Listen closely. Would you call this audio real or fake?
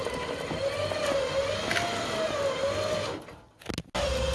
real